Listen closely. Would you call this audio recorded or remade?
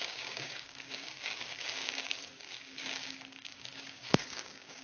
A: remade